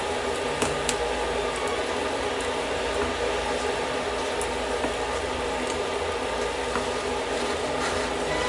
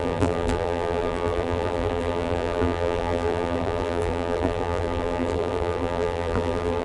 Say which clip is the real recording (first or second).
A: first